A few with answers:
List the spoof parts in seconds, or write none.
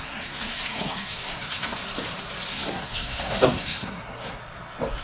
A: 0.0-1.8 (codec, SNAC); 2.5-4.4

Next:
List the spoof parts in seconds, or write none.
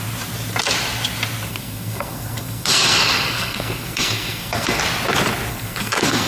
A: 1.5-4.8 (codec, SNAC); 5.5-6.3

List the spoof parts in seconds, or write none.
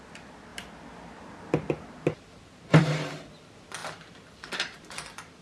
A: none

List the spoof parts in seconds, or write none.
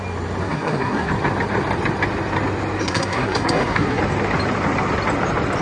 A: 0.4-1.1 (codec, SNAC); 2.8-4.0